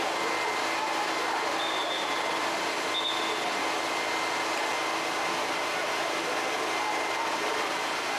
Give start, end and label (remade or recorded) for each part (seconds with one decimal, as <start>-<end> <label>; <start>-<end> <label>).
0.0-8.2 recorded

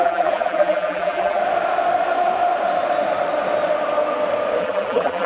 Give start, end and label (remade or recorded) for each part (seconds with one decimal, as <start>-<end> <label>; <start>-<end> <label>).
0.0-1.4 remade; 1.4-4.6 recorded; 4.6-5.3 remade

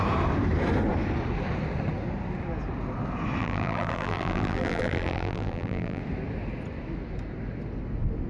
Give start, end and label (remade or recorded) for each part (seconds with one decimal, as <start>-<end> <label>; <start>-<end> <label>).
0.0-3.4 recorded; 3.4-6.0 remade; 6.0-8.3 recorded

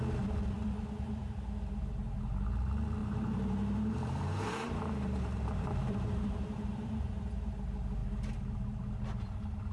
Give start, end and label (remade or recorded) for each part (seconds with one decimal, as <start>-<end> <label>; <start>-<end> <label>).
0.0-3.0 recorded; 3.0-7.3 remade; 7.3-8.0 recorded; 8.0-9.0 remade; 9.0-9.7 recorded